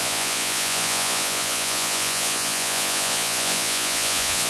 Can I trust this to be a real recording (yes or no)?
no